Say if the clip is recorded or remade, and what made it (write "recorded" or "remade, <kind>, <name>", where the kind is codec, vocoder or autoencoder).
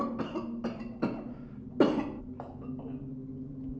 recorded